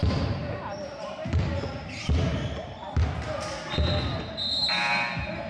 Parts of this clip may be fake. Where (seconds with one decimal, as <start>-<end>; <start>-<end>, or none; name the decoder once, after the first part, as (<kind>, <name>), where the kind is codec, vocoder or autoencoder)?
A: none